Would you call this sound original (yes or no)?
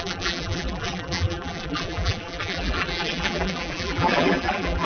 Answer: no